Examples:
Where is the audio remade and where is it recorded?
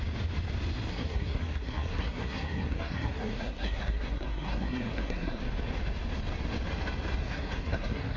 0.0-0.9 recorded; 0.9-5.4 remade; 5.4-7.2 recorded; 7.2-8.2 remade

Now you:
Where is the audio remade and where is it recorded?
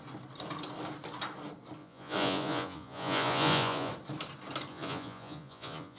0.0-1.8 recorded; 1.8-3.9 remade; 3.9-4.7 recorded; 4.7-6.0 remade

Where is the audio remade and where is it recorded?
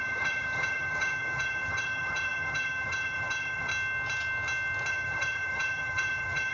0.0-3.7 remade; 3.7-4.9 recorded; 4.9-6.5 remade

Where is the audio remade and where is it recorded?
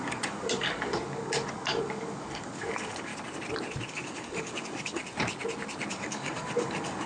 0.0-3.1 remade; 3.1-3.9 recorded; 3.9-5.0 remade; 5.0-5.9 recorded; 5.9-7.1 remade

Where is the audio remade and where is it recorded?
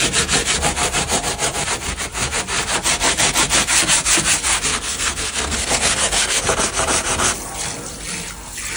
0.0-4.7 recorded; 4.7-6.4 remade; 6.4-8.8 recorded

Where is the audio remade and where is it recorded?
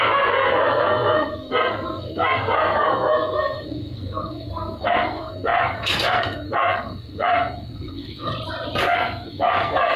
0.0-8.3 remade; 8.3-8.8 recorded; 8.8-10.0 remade